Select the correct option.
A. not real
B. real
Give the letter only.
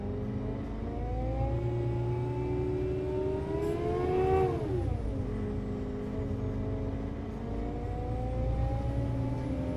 B